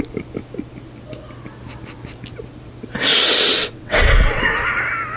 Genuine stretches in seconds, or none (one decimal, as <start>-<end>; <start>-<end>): 0.0-3.1; 4.5-5.2